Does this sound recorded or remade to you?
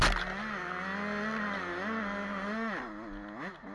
recorded